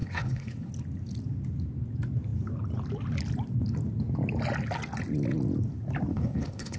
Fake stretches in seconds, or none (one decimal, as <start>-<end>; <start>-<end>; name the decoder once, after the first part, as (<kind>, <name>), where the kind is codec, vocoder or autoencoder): 0.0-0.7 (codec, HILCodec); 6.1-6.8

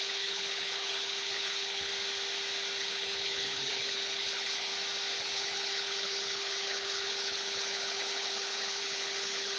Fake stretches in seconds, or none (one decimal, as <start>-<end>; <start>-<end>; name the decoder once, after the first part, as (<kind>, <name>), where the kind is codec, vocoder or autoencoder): 0.0-1.9 (codec, HILCodec); 2.8-4.7; 5.2-9.6

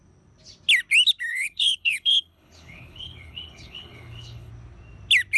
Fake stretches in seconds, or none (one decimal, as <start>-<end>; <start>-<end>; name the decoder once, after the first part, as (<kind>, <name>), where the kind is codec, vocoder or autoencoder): 1.3-4.5 (codec, HILCodec)

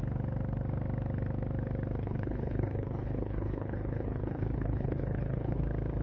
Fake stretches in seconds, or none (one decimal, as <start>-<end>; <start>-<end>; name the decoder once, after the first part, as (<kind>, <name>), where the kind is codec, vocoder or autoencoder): 2.0-5.6 (codec, HILCodec)